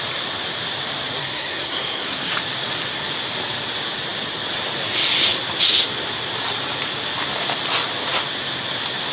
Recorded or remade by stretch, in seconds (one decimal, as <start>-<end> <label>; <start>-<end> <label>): 0.0-1.2 recorded; 1.2-2.3 remade; 2.3-9.1 recorded